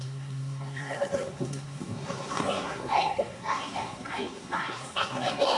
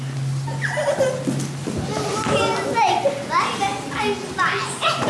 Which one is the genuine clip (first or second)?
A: second